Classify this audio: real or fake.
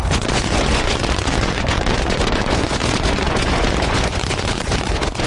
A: fake